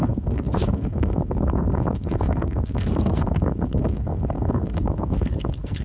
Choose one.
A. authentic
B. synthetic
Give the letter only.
B